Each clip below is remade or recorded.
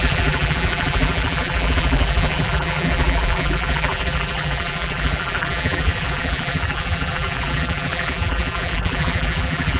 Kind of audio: remade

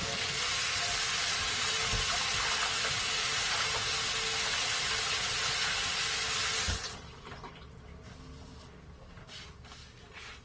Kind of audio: recorded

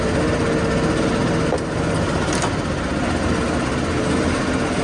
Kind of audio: recorded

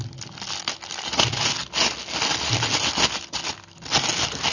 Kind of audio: recorded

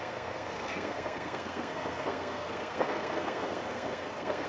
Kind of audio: remade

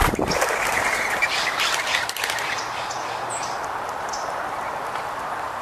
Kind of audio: recorded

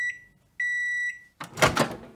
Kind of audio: recorded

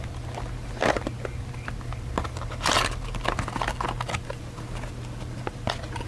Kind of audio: recorded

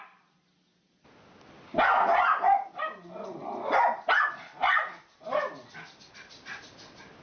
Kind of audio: recorded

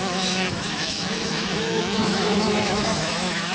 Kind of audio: remade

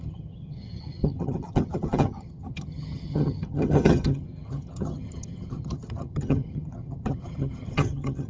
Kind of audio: remade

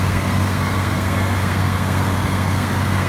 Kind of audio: remade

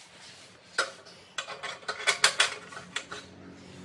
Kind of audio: recorded